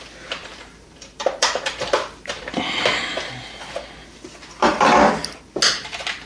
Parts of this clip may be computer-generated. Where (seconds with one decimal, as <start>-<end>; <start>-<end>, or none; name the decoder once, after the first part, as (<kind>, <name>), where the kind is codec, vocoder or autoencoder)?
0.4-2.4 (vocoder, BigVGAN v2)